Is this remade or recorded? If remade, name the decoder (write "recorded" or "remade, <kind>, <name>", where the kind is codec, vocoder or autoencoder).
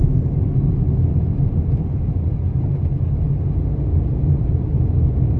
recorded